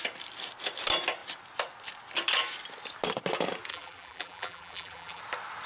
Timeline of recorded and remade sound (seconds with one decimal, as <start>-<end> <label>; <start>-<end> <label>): 0.0-3.7 recorded; 3.7-5.2 remade; 5.2-5.7 recorded